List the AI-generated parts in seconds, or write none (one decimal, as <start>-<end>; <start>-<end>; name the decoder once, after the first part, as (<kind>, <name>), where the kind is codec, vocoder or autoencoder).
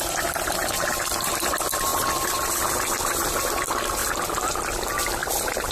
1.9-2.5 (vocoder, BigVGAN v2); 4.0-4.5; 5.2-5.7